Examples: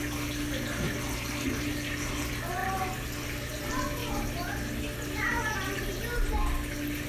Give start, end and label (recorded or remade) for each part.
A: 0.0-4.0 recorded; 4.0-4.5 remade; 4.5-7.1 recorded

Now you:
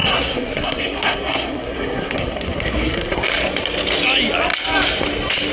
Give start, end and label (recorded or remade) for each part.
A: 0.0-3.3 remade; 3.3-5.5 recorded

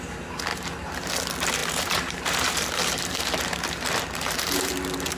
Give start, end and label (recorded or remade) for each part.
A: 0.0-0.5 recorded; 0.5-1.1 remade; 1.1-1.6 recorded; 1.6-4.7 remade; 4.7-5.2 recorded